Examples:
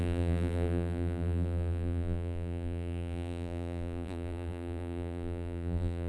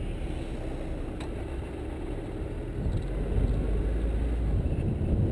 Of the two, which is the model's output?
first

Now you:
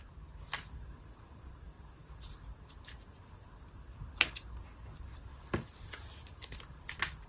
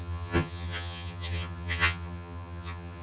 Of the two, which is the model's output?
second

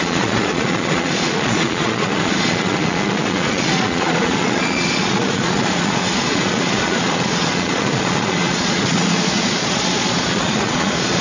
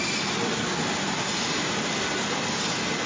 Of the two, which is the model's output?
first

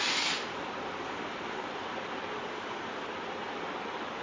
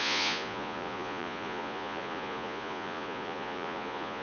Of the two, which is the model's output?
second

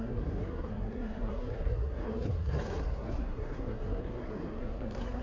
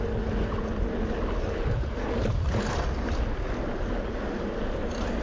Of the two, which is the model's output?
first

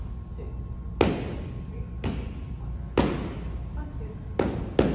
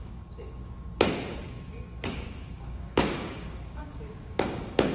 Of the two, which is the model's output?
second